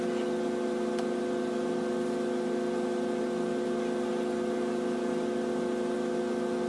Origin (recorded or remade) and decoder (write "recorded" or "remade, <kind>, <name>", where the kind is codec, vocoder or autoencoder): recorded